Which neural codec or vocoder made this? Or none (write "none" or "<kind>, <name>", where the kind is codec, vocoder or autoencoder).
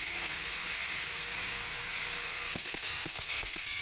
codec, SNAC